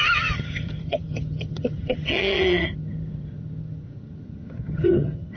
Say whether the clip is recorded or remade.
remade